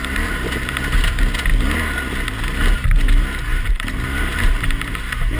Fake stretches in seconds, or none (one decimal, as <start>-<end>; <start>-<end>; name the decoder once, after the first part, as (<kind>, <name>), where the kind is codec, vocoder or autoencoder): 0.0-0.7 (vocoder, BigVGAN v2); 3.5-5.4